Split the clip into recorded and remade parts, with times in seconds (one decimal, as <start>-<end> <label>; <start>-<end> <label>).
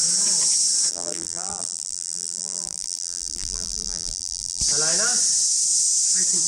0.0-0.9 recorded; 0.9-4.6 remade; 4.6-6.5 recorded